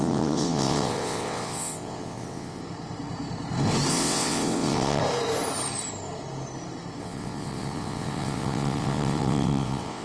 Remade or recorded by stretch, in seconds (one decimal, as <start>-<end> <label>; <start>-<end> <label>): 0.0-2.6 remade; 2.6-3.9 recorded; 3.9-5.0 remade; 5.0-7.0 recorded; 7.0-10.0 remade